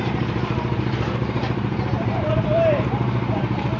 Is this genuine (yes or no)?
no